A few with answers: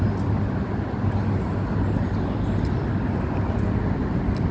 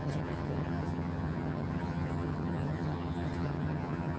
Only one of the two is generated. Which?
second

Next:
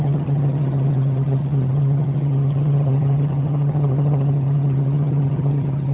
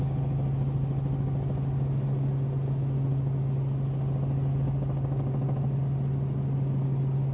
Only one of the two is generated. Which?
first